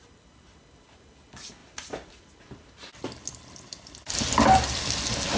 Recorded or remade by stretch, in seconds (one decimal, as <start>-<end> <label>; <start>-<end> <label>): 0.0-5.4 recorded